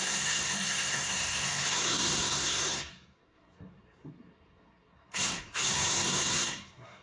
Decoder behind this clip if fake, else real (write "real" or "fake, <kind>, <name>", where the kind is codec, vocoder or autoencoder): fake, codec, SNAC